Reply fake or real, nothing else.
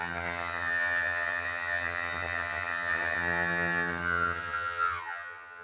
fake